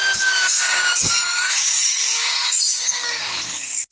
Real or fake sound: fake